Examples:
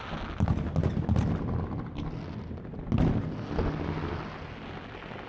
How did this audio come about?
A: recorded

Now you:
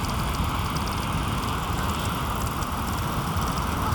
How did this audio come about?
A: recorded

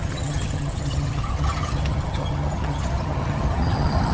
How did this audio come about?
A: remade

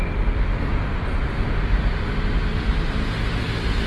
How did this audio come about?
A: recorded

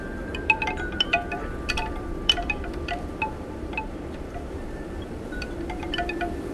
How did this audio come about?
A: remade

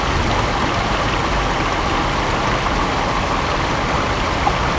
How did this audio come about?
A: recorded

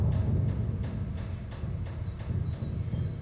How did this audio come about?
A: recorded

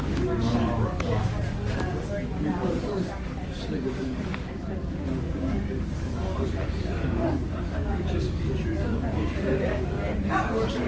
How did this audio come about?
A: remade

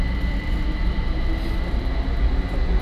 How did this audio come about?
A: recorded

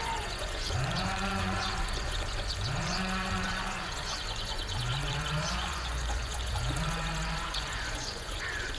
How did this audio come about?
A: remade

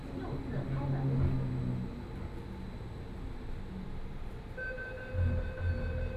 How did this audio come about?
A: recorded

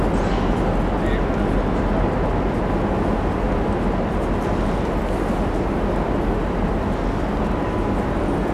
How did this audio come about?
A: recorded